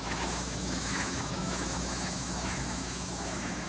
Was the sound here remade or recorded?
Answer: remade